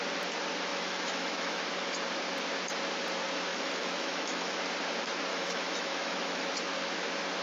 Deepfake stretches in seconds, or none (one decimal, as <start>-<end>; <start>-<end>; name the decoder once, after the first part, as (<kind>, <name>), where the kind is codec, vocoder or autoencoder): 0.7-1.6 (autoencoder, DAC-VAE); 3.5-4.6; 5.3-6.5